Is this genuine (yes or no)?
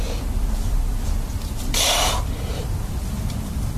no